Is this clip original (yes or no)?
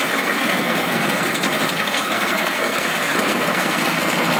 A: no